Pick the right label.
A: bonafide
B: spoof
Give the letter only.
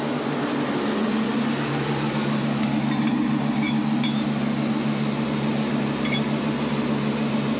A